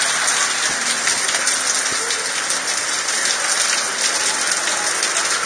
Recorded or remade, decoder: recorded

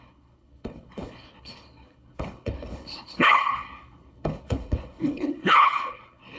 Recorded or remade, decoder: remade, codec, HILCodec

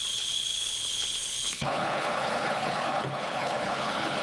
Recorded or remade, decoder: remade, codec, HILCodec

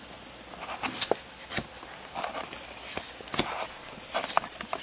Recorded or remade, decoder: recorded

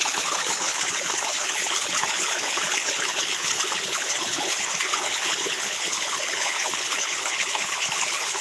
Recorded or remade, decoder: remade, codec, HILCodec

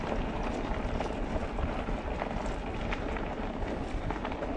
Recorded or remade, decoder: recorded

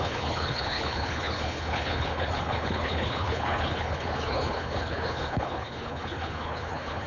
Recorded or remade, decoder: remade, codec, HILCodec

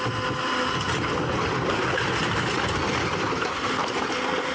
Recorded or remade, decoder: recorded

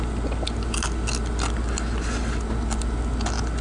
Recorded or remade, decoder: recorded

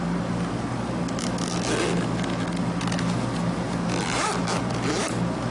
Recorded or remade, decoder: recorded